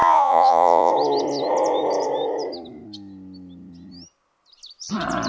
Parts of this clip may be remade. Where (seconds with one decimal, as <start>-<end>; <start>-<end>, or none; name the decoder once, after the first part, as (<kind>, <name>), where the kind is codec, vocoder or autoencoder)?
0.0-0.9 (vocoder, Vocos)